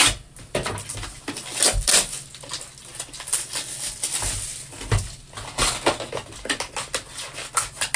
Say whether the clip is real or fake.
real